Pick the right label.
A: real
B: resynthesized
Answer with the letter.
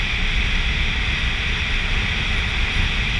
A